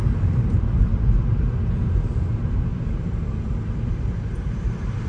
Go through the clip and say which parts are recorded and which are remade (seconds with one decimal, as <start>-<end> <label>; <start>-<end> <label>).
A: 0.0-0.9 remade; 0.9-1.8 recorded; 1.8-2.7 remade; 2.7-3.4 recorded; 3.4-5.1 remade